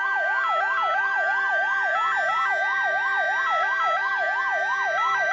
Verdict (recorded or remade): recorded